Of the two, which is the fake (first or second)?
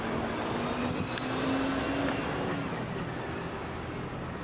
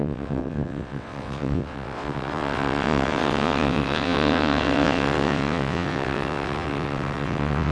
second